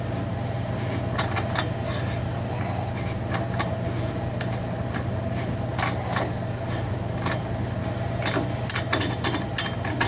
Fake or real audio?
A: real